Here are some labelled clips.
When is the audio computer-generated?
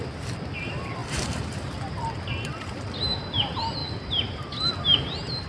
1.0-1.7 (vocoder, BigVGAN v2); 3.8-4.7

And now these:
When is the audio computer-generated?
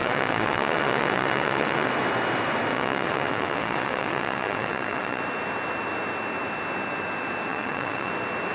0.0-1.9 (vocoder, WaveNeXt); 2.7-5.2; 7.5-8.1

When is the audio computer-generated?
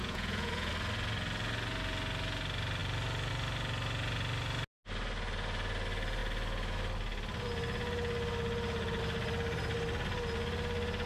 0.0-0.7 (vocoder, Vocos)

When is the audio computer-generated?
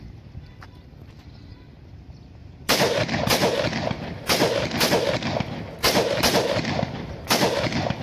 2.4-3.0 (vocoder, BigVGAN v2)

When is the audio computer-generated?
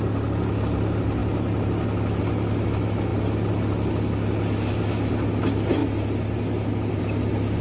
none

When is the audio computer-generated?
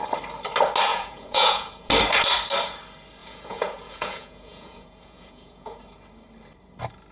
0.9-1.9 (vocoder, Vocos); 3.2-5.8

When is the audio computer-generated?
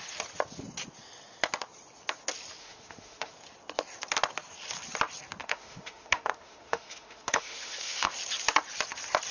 2.6-3.3 (autoencoder, DAC-VAE); 5.4-8.1